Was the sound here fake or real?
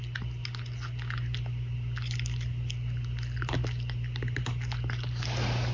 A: real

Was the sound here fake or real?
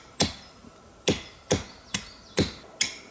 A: real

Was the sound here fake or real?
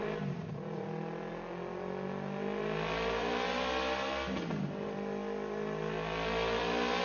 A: real